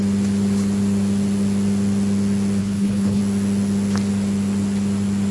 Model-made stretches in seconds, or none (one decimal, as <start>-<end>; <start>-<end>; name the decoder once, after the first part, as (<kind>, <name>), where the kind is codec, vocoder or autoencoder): 2.6-3.2 (codec, HILCodec)